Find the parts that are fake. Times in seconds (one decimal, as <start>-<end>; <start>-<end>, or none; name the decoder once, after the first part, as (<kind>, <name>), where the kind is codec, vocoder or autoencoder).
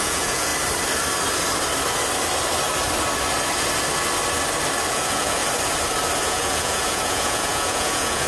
0.0-0.5 (vocoder, Vocos); 4.9-5.4; 6.2-8.3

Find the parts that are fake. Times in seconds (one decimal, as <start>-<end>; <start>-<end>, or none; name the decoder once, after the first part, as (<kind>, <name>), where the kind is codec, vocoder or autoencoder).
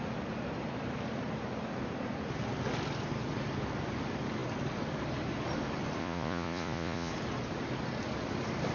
6.0-7.1 (vocoder, Vocos)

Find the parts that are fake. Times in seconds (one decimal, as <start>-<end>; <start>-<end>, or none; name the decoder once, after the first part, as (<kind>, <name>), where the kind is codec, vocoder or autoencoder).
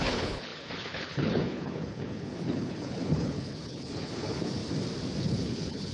0.0-4.6 (codec, HILCodec); 5.2-5.9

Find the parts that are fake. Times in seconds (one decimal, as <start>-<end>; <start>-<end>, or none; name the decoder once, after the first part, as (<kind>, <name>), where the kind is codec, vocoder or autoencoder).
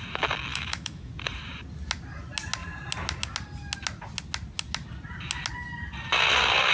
0.5-1.1 (autoencoder, DAC-VAE)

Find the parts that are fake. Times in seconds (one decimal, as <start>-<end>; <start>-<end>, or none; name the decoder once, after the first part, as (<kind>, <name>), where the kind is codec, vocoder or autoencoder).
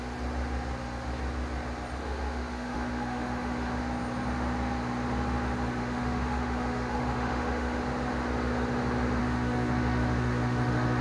2.0-3.8 (autoencoder, DAC-VAE); 5.8-7.8; 9.2-11.0